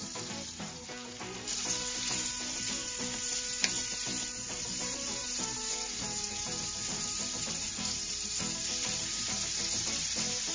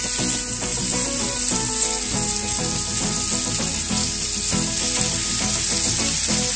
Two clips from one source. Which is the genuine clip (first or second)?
second